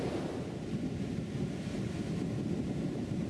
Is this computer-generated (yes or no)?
no